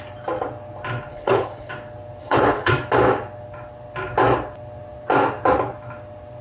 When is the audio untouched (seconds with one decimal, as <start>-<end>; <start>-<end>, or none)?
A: 0.0-1.1; 1.7-2.2; 2.7-6.4